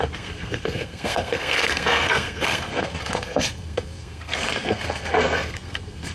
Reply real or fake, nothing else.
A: fake